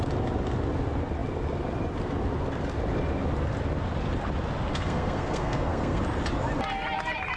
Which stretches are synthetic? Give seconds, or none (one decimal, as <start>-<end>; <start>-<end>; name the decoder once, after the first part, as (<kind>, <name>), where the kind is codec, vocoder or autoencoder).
4.7-6.0 (codec, SNAC)